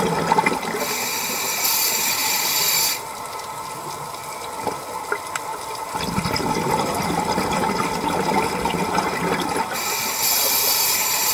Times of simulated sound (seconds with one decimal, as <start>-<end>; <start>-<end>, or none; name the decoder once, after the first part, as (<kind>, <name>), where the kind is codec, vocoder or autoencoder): none